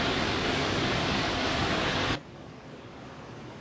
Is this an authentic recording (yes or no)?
no